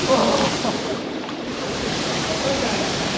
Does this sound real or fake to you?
fake